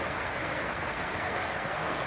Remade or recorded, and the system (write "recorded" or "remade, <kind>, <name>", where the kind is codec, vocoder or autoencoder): remade, codec, SNAC